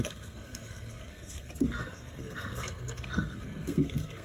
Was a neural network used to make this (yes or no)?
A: yes